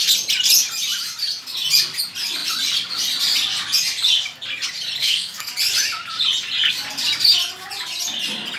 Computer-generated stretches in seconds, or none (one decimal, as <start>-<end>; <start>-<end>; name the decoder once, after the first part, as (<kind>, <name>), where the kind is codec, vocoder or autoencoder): 5.0-5.5 (codec, SNAC)